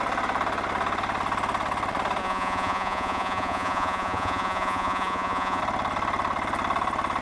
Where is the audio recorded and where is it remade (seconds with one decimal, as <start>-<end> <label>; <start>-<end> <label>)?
0.0-2.2 recorded; 2.2-5.6 remade; 5.6-7.2 recorded